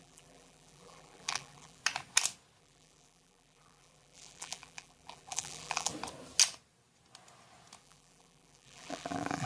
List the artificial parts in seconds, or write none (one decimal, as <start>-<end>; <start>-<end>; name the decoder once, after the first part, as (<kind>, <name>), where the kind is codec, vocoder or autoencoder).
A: 0.0-1.8 (vocoder, BigVGAN v2); 2.6-5.9; 7.8-9.5